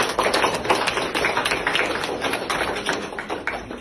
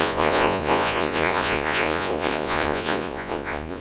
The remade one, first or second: second